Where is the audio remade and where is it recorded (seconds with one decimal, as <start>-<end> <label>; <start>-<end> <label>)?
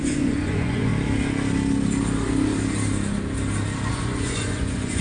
0.0-0.9 remade; 0.9-3.9 recorded; 3.9-5.0 remade